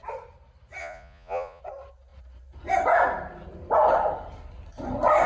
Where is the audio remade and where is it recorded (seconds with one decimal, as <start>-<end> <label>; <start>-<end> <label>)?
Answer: 0.0-0.8 recorded; 0.8-1.6 remade; 1.6-5.3 recorded